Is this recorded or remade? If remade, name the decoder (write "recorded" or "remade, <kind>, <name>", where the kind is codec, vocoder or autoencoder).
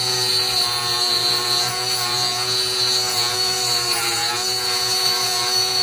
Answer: remade, vocoder, Vocos